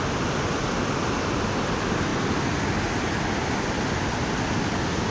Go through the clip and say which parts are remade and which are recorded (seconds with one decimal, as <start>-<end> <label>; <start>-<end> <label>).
0.0-5.1 recorded